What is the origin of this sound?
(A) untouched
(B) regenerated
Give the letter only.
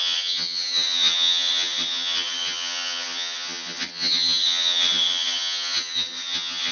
B